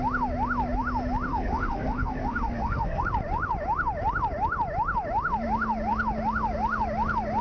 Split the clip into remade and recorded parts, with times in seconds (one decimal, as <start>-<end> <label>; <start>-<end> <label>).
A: 0.0-1.3 recorded; 1.3-3.0 remade; 3.0-7.4 recorded

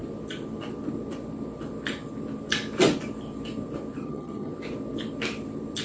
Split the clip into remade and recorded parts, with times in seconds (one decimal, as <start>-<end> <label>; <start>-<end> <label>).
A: 0.0-4.0 recorded; 4.0-4.5 remade; 4.5-5.8 recorded

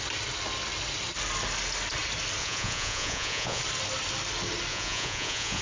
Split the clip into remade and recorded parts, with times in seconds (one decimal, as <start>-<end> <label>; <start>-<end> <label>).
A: 0.0-2.4 recorded; 2.4-3.6 remade; 3.6-4.7 recorded; 4.7-5.6 remade

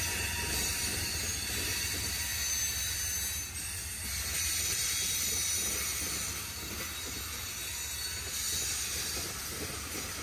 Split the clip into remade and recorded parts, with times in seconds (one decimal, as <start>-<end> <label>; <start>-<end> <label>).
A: 0.0-10.2 recorded

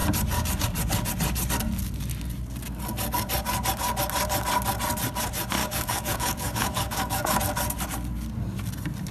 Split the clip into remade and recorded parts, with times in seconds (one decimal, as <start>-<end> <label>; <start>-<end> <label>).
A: 0.0-5.6 recorded; 5.6-7.4 remade; 7.4-9.1 recorded

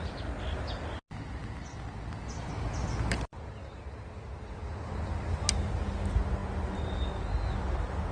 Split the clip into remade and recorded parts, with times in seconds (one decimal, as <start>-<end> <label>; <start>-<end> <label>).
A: 0.0-8.1 recorded

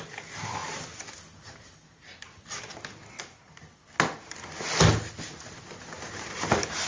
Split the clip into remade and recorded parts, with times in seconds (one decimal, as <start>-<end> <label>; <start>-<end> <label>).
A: 0.0-6.9 recorded